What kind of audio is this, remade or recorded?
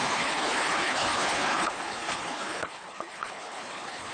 remade